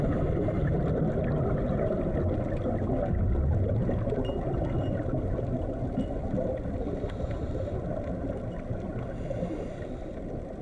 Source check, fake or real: real